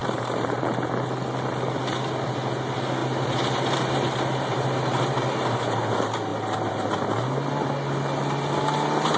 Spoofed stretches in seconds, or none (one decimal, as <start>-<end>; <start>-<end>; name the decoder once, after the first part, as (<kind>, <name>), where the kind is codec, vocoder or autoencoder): 0.0-0.6 (vocoder, BigVGAN v2); 3.0-5.8